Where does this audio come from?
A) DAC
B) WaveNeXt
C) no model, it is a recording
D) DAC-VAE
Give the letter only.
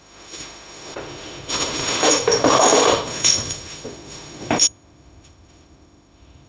D